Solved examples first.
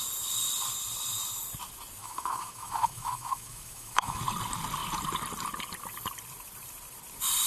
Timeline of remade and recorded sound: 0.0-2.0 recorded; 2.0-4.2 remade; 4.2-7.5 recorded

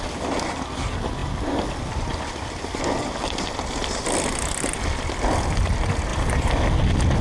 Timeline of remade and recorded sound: 0.0-7.2 recorded

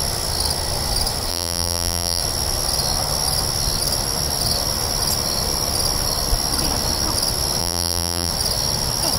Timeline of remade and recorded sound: 0.0-1.3 recorded; 1.3-2.2 remade; 2.2-7.6 recorded; 7.6-8.3 remade; 8.3-9.2 recorded

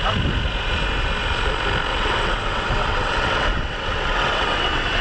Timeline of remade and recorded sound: 0.0-1.9 recorded; 1.9-5.0 remade

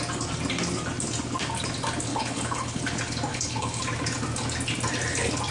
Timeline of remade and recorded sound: 0.0-2.1 recorded; 2.1-2.8 remade; 2.8-3.3 recorded; 3.3-3.8 remade; 3.8-5.5 recorded

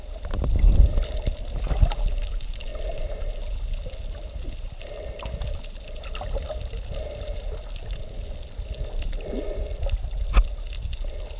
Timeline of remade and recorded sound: 0.0-11.4 recorded

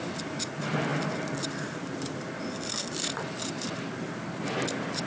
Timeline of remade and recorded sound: 0.0-5.1 recorded